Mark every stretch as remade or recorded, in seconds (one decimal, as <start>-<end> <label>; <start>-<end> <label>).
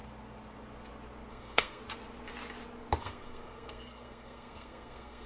0.0-1.3 recorded; 1.3-1.8 remade; 1.8-3.0 recorded; 3.0-5.3 remade